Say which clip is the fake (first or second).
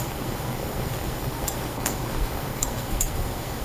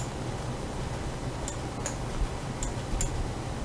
first